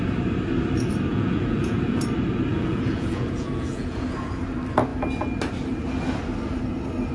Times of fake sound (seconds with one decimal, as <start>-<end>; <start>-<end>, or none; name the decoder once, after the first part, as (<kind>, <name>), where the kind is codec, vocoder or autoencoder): 1.1-2.0 (vocoder, Vocos); 2.5-4.4